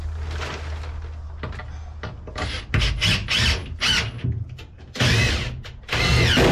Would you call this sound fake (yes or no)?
no